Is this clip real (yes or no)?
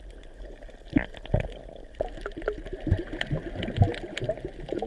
yes